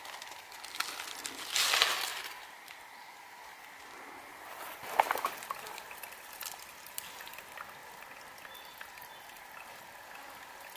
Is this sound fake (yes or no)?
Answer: no